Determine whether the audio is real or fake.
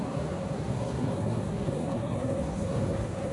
fake